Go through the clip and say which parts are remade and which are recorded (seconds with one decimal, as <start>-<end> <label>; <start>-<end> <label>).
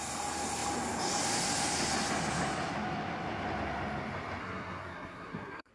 0.0-4.4 recorded; 4.4-5.7 remade